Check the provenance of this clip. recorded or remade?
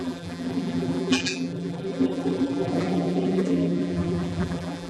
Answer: remade